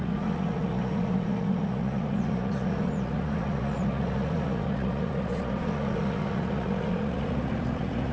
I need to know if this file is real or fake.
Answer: fake